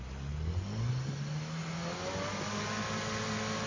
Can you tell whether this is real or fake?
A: real